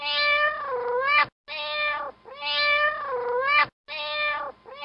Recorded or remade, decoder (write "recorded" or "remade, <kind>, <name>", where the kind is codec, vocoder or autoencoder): recorded